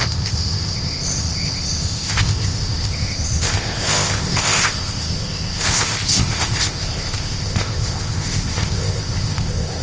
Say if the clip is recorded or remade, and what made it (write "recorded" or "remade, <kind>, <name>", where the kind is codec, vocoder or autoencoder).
remade, codec, ZipCodec